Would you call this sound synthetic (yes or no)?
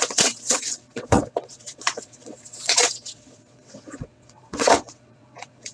yes